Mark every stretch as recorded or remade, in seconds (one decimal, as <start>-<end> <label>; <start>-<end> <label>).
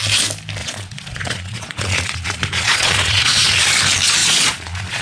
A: 0.0-0.6 recorded; 0.6-3.6 remade; 3.6-4.2 recorded; 4.2-5.0 remade